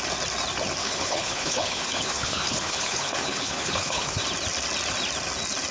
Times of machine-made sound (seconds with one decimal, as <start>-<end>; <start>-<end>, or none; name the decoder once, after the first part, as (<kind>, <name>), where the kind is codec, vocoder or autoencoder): 0.8-4.2 (codec, HILCodec)